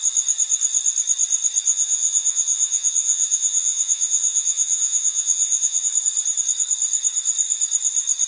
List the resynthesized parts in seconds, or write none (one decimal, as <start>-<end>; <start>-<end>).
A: 1.7-5.9